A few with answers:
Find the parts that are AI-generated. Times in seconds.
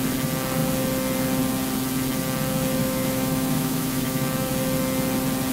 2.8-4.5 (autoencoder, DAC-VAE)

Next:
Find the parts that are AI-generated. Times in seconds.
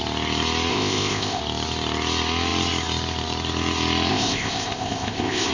0.7-1.4 (codec, ZipCodec); 4.1-5.5